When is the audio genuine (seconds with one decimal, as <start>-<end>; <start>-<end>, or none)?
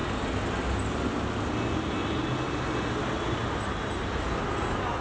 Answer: 0.0-5.0